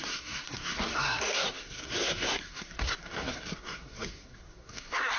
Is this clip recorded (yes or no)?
no